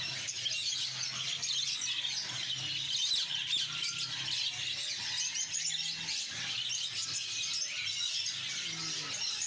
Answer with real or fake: real